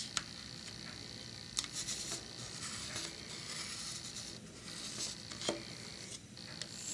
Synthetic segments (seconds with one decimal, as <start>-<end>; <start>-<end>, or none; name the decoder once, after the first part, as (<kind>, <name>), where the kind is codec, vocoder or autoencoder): none